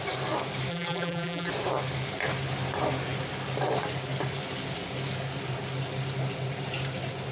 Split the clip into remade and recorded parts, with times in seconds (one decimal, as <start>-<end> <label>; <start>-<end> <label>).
0.0-0.7 recorded; 0.7-1.5 remade; 1.5-7.3 recorded